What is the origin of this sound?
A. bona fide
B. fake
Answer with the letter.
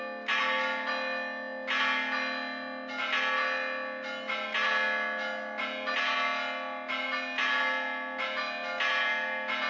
A